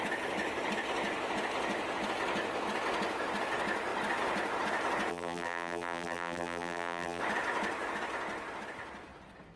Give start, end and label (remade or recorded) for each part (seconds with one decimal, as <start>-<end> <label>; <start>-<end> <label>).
0.0-5.1 recorded; 5.1-7.2 remade; 7.2-9.6 recorded